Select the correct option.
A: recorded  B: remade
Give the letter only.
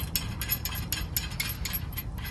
A